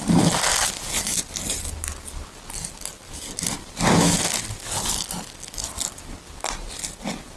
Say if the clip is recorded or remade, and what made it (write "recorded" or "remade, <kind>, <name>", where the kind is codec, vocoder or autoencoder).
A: recorded